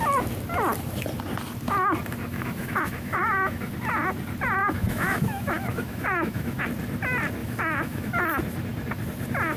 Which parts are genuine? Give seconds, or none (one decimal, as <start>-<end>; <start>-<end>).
0.0-2.3; 3.7-4.6; 6.6-7.4; 8.2-9.6